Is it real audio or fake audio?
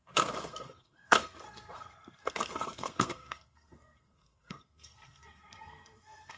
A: fake